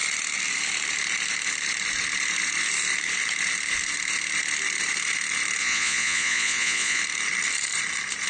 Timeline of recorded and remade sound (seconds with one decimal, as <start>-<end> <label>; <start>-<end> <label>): 0.0-5.6 recorded; 5.6-7.0 remade; 7.0-8.3 recorded